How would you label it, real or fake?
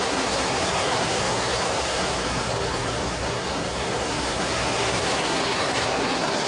fake